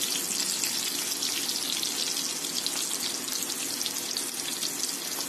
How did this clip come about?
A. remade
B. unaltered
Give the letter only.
B